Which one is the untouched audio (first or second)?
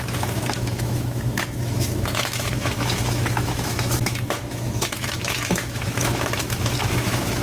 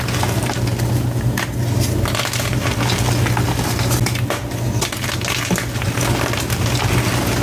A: second